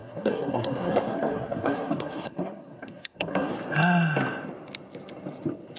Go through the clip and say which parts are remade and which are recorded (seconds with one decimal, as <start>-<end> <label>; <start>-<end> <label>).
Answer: 0.0-3.5 remade; 3.5-5.8 recorded